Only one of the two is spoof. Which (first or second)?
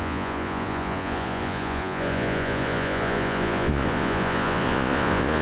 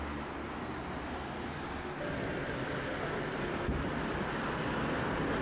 first